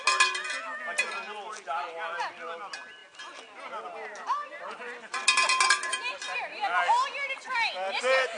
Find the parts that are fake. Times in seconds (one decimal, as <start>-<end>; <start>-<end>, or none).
none